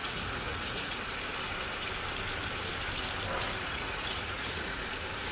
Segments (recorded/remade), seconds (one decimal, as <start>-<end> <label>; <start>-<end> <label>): 0.0-1.0 remade; 1.0-3.4 recorded; 3.4-4.8 remade; 4.8-5.3 recorded